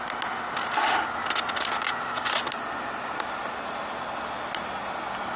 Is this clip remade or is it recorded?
recorded